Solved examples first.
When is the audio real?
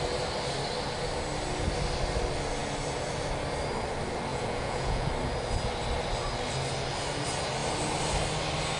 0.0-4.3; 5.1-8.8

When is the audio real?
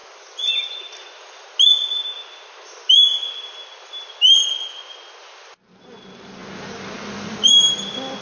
0.0-8.2